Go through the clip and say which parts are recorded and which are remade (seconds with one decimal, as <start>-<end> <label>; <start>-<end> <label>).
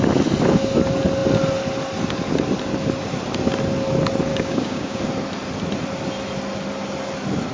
0.0-4.3 recorded; 4.3-5.0 remade; 5.0-7.5 recorded